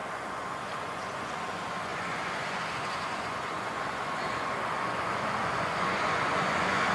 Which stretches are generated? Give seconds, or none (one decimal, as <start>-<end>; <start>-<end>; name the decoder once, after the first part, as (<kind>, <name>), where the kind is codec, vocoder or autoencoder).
0.0-6.9 (vocoder, Vocos)